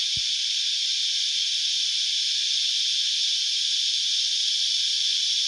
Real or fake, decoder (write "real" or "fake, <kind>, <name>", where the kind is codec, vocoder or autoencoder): real